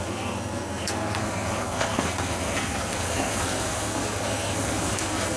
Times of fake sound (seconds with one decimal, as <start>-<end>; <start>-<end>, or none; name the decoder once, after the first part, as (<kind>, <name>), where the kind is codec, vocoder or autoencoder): 0.0-5.4 (codec, SNAC)